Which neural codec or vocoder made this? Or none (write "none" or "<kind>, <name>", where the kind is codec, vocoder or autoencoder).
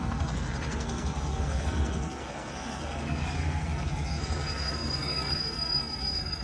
codec, SNAC